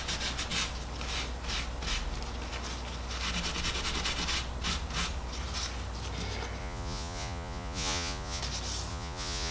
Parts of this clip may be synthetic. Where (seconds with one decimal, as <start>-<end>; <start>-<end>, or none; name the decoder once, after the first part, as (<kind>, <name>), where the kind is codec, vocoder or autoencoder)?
6.6-8.4 (vocoder, Vocos); 8.9-9.5